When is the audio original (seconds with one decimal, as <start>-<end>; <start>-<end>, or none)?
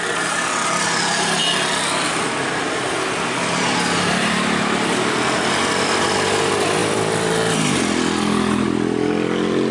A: 0.0-6.8; 7.3-9.7